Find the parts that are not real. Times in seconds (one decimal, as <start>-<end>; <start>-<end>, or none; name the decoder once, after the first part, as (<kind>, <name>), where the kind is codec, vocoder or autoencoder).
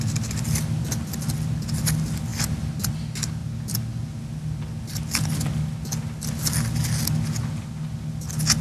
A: none